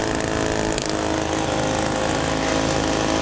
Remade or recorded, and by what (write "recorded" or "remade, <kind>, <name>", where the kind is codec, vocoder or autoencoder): recorded